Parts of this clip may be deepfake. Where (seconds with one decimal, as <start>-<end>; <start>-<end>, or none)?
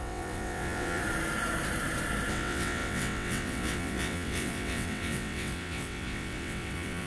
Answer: 0.0-1.0; 2.3-7.1